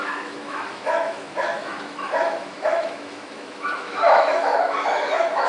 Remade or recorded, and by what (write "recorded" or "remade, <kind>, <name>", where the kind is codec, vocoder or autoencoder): remade, autoencoder, DAC-VAE